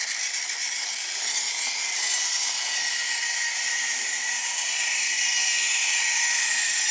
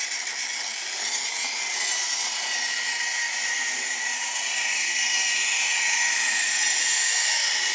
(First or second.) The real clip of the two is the second